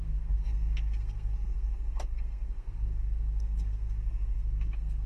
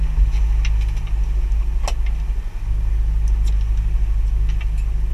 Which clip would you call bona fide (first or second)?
second